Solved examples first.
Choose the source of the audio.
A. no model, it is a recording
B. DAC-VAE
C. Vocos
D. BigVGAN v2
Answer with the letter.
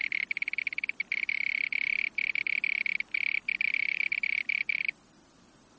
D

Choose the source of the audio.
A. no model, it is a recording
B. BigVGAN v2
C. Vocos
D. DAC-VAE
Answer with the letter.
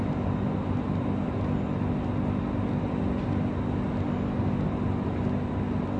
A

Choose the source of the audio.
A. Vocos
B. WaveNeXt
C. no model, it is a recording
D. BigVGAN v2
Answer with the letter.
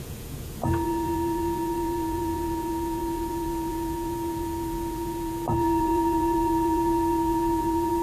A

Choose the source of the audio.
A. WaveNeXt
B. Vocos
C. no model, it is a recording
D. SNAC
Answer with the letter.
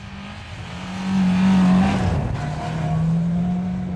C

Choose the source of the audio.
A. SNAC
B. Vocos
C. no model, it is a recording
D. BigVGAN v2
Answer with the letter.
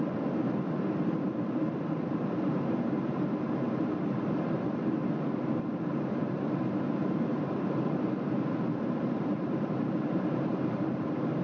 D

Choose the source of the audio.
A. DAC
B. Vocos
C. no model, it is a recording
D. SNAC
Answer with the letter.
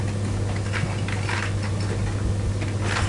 C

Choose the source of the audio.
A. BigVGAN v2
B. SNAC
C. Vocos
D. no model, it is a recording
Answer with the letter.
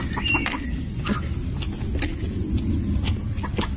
D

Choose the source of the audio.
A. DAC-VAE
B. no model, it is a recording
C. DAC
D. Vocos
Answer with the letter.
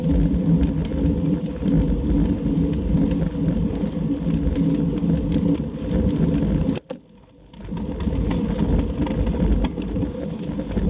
B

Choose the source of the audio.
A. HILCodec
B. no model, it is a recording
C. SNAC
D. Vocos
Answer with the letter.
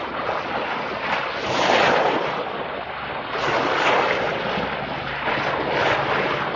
B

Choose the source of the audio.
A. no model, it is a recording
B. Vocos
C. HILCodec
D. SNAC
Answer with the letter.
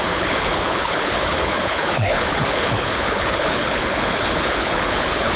C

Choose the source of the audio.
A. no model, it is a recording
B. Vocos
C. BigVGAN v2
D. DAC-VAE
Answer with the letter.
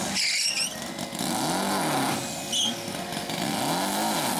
A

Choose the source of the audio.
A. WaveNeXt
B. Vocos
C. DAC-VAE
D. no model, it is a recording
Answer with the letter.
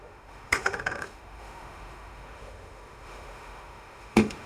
C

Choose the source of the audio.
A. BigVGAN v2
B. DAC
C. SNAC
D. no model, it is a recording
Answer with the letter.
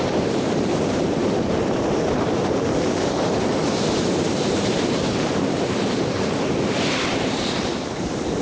A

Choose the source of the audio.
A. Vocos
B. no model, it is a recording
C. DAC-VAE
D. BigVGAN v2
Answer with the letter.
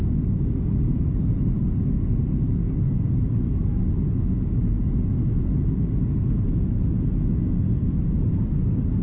B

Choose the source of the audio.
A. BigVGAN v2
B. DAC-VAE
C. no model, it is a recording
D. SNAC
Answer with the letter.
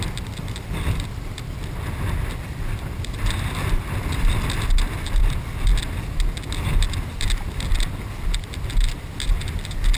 C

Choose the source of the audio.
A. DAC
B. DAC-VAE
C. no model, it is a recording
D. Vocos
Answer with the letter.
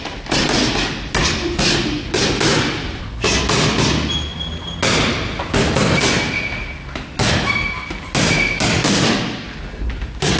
C